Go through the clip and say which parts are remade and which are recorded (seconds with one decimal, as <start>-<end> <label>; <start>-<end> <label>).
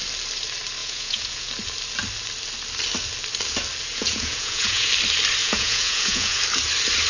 0.0-0.8 recorded; 0.8-1.5 remade; 1.5-3.9 recorded; 3.9-4.9 remade; 4.9-5.4 recorded; 5.4-6.4 remade; 6.4-7.1 recorded